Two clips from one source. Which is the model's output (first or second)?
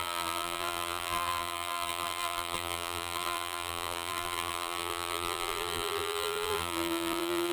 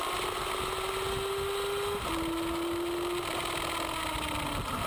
first